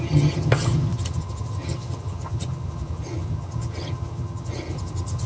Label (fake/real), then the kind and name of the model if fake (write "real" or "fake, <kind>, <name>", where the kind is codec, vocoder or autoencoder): fake, vocoder, HiFi-GAN